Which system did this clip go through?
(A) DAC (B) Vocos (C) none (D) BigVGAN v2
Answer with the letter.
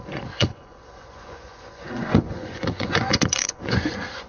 B